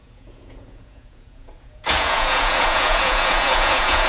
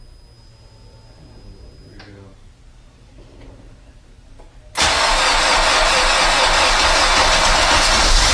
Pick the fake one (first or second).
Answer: first